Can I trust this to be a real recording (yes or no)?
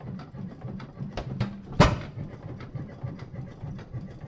no